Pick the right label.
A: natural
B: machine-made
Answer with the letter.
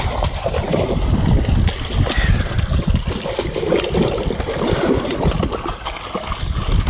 A